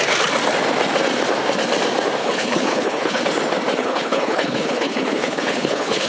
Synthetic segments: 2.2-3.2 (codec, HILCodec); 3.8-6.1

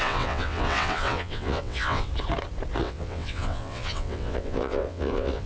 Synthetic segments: 0.0-2.1 (vocoder, WaveNeXt); 2.8-5.5

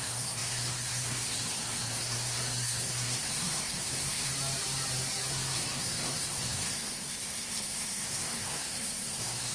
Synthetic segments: 0.0-4.3 (codec, SNAC); 5.3-9.5

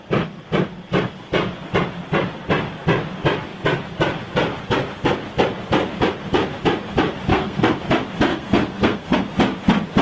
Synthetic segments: 7.3-7.8 (codec, SNAC); 8.3-9.2

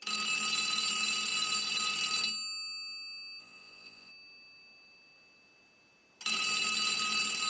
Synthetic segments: 3.4-4.1 (vocoder, Vocos)

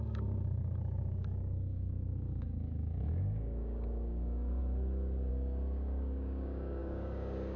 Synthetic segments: 0.0-4.6 (codec, DAC); 5.3-7.6

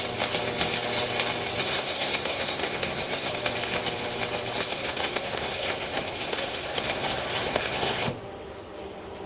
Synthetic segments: 1.6-3.3 (codec, SNAC); 4.7-8.1

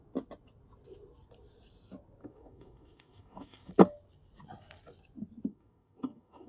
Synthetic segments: 2.2-3.7 (codec, DAC); 5.5-6.5